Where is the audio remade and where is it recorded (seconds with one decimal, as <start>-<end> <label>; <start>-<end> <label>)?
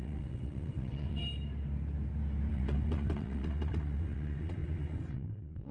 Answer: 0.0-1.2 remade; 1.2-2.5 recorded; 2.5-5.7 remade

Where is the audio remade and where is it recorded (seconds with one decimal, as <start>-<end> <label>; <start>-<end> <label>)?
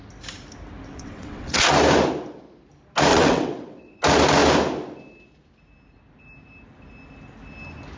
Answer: 0.0-0.9 recorded; 0.9-1.6 remade; 1.6-3.1 recorded; 3.1-4.0 remade; 4.0-8.0 recorded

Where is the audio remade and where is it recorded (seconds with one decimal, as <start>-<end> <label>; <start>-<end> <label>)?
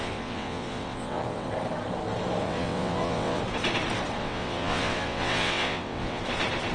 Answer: 0.0-1.5 remade; 1.5-2.4 recorded; 2.4-3.4 remade; 3.4-4.2 recorded; 4.2-6.2 remade; 6.2-6.7 recorded